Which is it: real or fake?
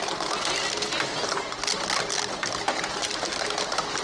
real